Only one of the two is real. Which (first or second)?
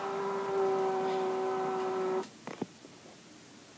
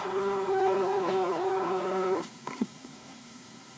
first